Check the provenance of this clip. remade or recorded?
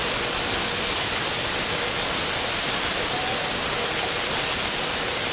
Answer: recorded